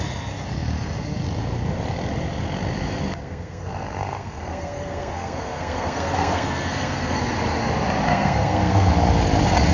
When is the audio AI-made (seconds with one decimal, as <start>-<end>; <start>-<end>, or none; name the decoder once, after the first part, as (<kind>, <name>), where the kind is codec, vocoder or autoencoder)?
3.2-7.2 (codec, SNAC); 8.1-8.9